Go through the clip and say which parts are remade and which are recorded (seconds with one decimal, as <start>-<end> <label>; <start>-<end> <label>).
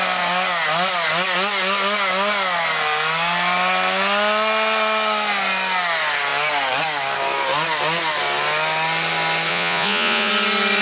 0.0-9.5 recorded; 9.5-10.3 remade; 10.3-10.8 recorded